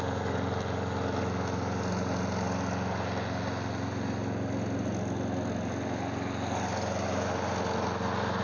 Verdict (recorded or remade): recorded